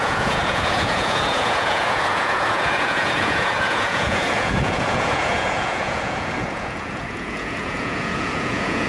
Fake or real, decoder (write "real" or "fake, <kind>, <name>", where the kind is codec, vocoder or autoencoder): fake, vocoder, Vocos